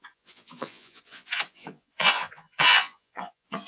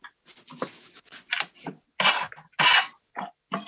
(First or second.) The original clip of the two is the second